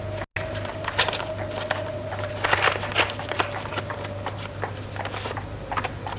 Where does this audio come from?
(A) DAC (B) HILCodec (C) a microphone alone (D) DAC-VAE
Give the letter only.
C